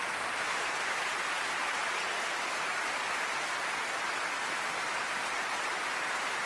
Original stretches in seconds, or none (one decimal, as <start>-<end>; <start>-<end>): 0.0-6.5